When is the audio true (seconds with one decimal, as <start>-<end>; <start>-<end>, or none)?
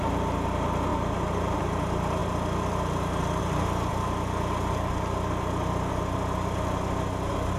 0.0-7.6